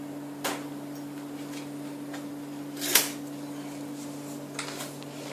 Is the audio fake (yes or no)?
no